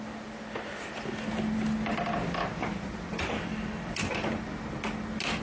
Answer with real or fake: real